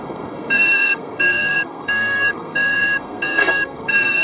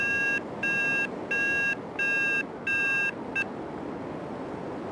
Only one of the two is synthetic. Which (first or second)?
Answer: first